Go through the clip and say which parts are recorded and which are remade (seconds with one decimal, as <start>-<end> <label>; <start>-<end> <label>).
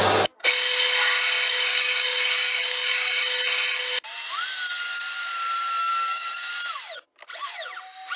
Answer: 0.0-1.7 recorded; 1.7-3.2 remade; 3.2-5.8 recorded; 5.8-6.5 remade; 6.5-8.2 recorded